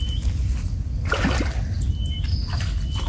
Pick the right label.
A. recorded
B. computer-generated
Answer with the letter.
A